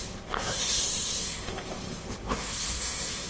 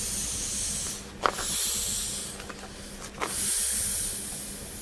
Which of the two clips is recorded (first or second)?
second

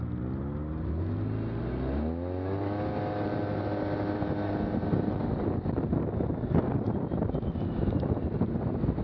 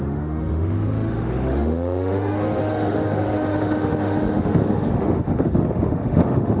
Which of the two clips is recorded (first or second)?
first